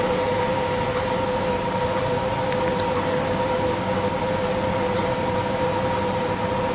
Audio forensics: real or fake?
real